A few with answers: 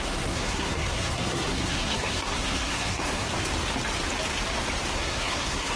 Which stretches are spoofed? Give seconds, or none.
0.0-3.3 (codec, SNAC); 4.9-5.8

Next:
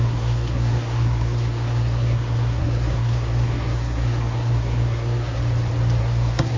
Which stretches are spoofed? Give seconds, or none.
0.0-5.4 (codec, SNAC); 6.0-6.6

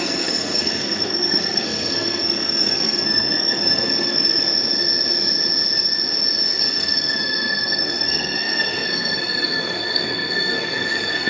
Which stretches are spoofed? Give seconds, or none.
0.0-4.4 (codec, SNAC); 6.6-11.3

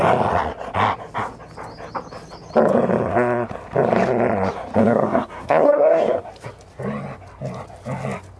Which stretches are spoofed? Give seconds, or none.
4.8-6.3 (codec, SNAC)